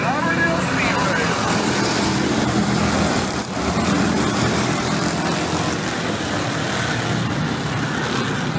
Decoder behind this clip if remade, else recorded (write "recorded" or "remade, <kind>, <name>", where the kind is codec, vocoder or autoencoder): recorded